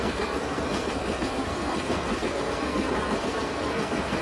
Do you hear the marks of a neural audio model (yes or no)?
yes